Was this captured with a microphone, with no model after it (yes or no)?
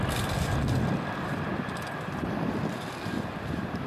yes